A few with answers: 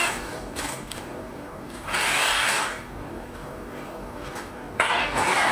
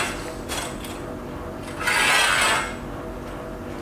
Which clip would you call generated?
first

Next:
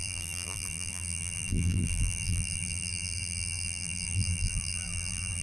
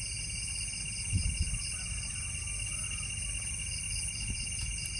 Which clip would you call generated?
first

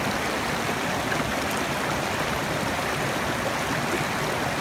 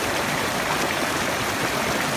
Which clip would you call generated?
second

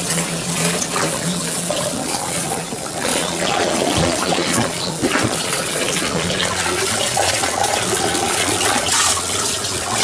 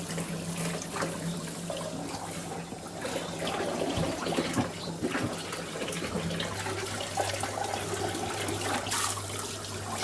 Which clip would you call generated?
first